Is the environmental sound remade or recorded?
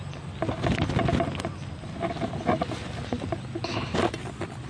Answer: recorded